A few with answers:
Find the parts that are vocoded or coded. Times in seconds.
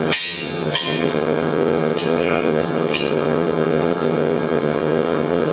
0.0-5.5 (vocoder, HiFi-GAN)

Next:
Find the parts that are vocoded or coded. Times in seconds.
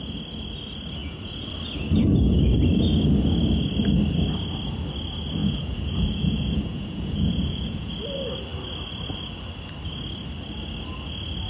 1.0-1.5 (vocoder, Vocos); 5.4-7.9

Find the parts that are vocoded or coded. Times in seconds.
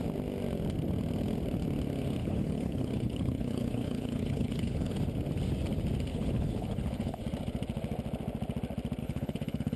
2.2-5.0 (codec, HILCodec); 6.1-7.2; 9.0-9.8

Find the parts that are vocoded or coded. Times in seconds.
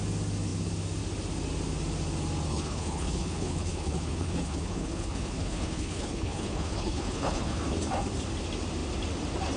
2.5-7.6 (codec, HILCodec)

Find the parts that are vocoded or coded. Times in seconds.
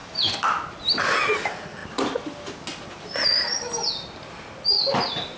none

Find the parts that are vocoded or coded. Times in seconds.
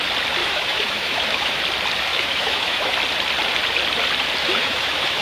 0.4-1.6 (autoencoder, DAC-VAE); 2.1-2.9; 4.4-5.2